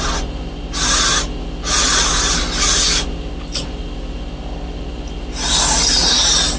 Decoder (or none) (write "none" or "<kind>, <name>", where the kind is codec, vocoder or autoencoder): none